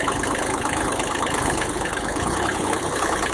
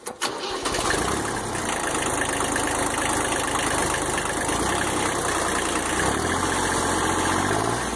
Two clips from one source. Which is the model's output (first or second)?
first